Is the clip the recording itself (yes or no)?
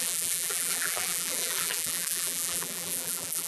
no